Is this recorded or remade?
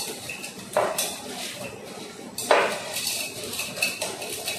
remade